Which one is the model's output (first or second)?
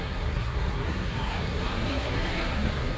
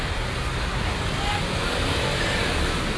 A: first